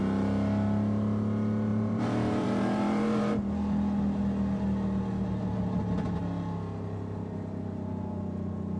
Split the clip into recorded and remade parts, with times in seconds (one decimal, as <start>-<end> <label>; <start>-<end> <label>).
0.0-1.7 recorded; 1.7-3.4 remade; 3.4-8.8 recorded